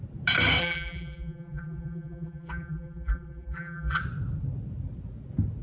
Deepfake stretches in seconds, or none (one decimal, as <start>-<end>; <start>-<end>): 0.6-4.0

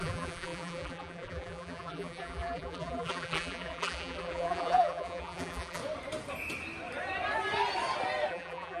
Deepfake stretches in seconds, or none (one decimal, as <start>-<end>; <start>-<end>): 0.0-5.8; 8.3-8.8

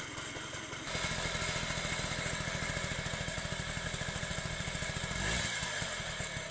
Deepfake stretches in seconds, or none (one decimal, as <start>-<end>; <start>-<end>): 4.3-5.8

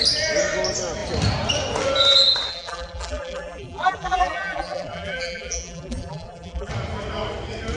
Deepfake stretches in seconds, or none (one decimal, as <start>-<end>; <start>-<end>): 2.5-6.7

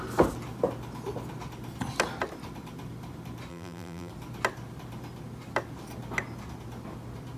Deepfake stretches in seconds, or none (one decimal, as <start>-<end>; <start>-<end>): 3.5-4.1

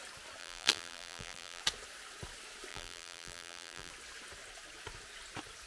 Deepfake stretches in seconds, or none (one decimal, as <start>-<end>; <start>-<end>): 0.4-1.6; 2.7-3.9

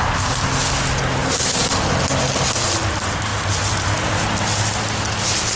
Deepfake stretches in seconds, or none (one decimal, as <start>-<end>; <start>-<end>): 1.2-1.9

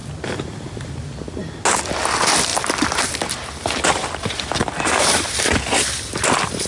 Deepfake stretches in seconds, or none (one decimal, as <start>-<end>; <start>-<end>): 2.5-6.7